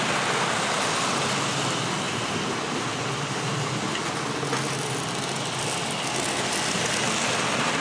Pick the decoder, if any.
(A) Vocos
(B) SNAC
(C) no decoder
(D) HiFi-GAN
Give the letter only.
C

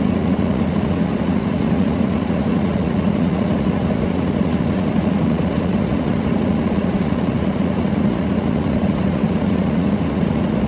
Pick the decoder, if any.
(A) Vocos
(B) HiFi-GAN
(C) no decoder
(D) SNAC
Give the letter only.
A